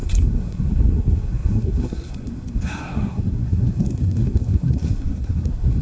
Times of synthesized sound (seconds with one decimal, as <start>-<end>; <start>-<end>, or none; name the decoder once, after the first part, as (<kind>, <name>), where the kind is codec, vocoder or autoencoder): 0.0-5.8 (codec, SNAC)